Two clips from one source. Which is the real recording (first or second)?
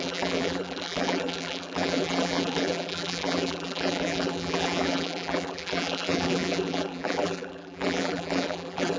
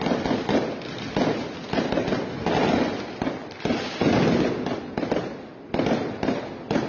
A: second